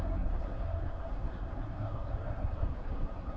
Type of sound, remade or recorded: remade